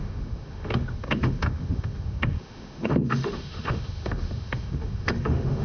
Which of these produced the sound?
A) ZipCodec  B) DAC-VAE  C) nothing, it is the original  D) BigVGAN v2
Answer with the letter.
B